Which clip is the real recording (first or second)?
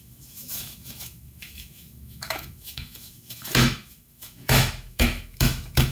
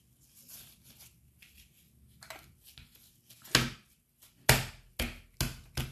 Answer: second